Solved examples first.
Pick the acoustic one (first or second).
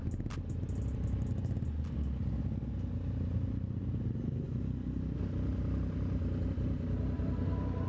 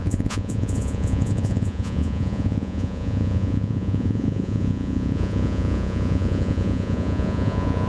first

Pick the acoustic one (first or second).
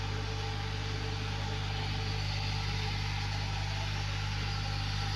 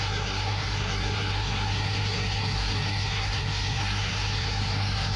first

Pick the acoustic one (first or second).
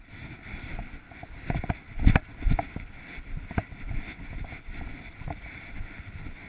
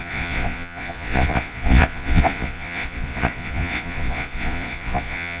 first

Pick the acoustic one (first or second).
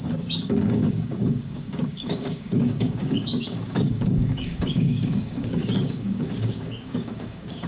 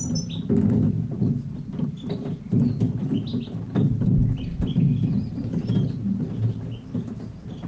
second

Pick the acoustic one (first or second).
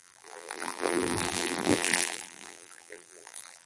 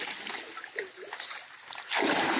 second